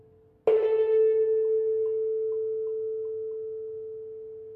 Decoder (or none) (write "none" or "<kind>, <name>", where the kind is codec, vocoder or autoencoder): none